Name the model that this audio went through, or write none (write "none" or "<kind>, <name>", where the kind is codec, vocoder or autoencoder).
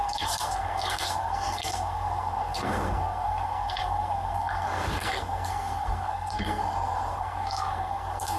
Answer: codec, SNAC